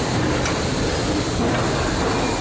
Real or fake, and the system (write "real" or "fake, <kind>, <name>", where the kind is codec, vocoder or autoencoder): real